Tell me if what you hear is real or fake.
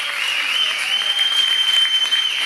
real